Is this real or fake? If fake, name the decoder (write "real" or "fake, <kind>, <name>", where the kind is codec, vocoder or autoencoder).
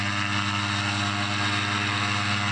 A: real